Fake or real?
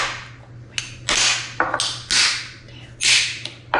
real